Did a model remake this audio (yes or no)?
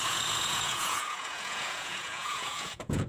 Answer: yes